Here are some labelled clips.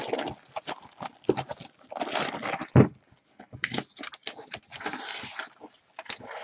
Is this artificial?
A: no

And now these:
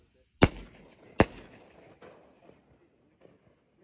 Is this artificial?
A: no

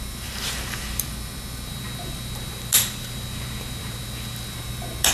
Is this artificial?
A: yes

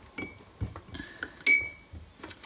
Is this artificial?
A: no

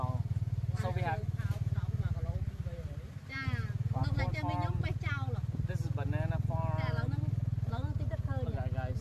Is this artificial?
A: no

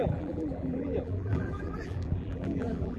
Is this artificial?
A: yes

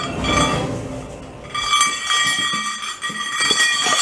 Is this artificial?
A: no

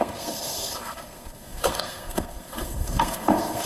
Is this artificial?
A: yes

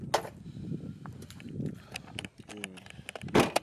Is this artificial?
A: no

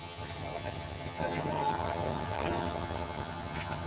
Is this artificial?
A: yes